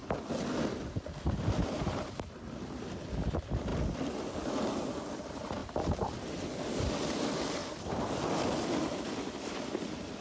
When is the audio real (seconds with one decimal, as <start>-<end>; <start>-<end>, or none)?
0.0-10.2